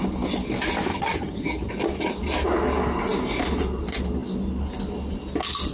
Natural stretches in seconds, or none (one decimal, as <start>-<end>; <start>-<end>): 0.0-0.9; 1.7-5.7